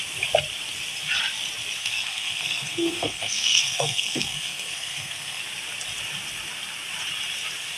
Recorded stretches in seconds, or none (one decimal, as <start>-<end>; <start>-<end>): 0.0-1.8; 5.4-7.8